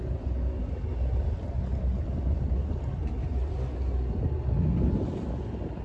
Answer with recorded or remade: recorded